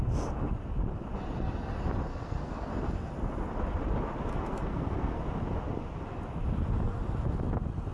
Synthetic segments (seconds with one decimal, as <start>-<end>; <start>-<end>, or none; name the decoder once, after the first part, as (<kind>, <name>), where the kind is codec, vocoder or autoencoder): 2.1-2.7 (codec, SNAC); 4.3-5.2